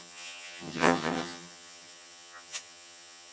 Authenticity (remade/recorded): remade